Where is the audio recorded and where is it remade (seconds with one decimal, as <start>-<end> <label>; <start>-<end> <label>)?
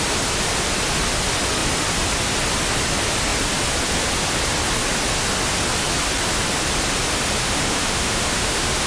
0.0-7.4 recorded; 7.4-8.9 remade